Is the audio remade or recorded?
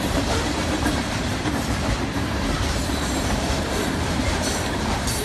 remade